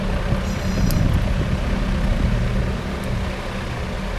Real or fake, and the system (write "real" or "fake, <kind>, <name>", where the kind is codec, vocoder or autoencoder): real